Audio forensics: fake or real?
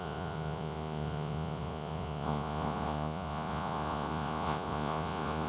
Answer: fake